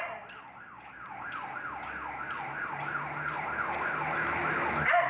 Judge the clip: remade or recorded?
recorded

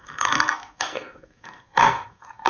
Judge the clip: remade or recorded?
remade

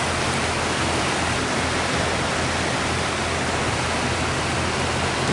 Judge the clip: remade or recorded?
recorded